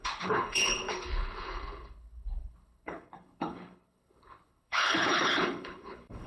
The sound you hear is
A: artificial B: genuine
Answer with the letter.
A